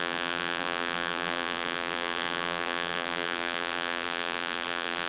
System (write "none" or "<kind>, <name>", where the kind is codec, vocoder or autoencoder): vocoder, BigVGAN v2